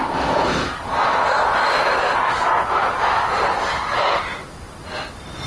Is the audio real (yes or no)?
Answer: yes